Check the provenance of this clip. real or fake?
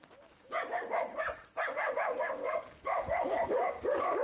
fake